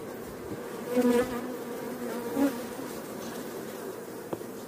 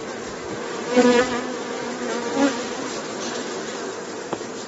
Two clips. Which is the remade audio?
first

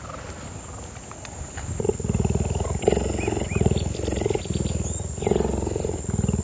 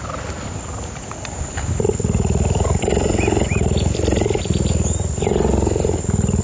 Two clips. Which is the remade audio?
second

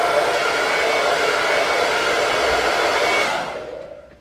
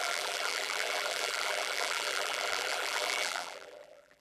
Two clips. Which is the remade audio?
second